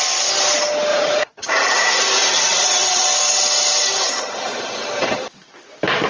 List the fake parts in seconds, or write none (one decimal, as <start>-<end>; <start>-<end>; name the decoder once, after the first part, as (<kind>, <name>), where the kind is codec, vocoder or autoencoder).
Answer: 0.9-1.5 (vocoder, Vocos); 2.2-3.0